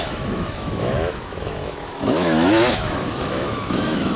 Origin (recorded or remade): remade